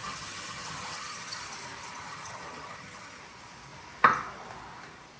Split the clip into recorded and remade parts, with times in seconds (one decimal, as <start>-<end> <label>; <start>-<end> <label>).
0.0-1.4 remade; 1.4-1.9 recorded; 1.9-3.2 remade; 3.2-5.2 recorded